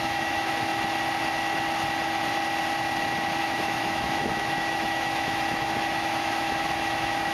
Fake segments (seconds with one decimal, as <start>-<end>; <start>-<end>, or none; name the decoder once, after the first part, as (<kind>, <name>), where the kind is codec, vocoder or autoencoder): 0.0-0.7 (autoencoder, DAC-VAE); 3.4-7.3